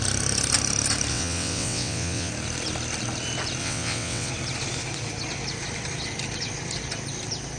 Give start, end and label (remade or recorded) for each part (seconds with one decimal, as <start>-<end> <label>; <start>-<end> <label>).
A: 0.0-1.1 recorded; 1.1-2.3 remade; 2.3-3.6 recorded; 3.6-4.3 remade; 4.3-7.6 recorded